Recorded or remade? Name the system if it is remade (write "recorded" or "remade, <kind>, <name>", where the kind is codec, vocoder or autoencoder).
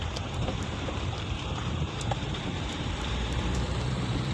remade, vocoder, BigVGAN v2